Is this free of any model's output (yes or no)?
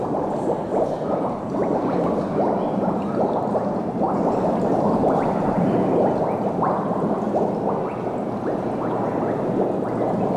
yes